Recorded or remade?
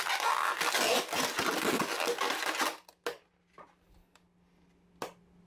recorded